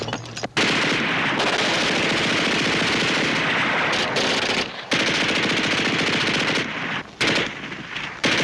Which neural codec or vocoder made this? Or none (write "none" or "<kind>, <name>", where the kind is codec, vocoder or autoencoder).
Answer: none